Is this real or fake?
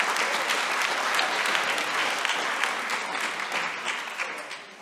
real